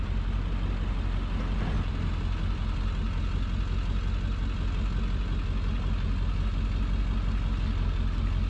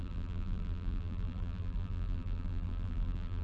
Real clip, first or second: first